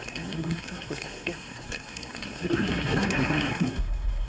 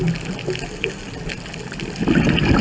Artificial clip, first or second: first